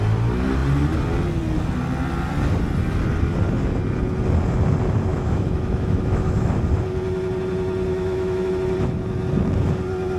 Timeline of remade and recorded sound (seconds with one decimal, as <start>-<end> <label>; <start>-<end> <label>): 0.0-5.1 recorded; 5.1-6.5 remade; 6.5-7.9 recorded; 7.9-8.5 remade; 8.5-10.2 recorded